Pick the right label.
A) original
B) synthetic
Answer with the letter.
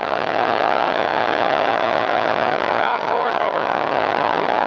B